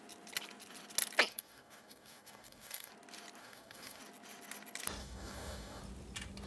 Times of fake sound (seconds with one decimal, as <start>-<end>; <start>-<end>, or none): 1.3-2.9; 3.4-4.0; 5.0-5.8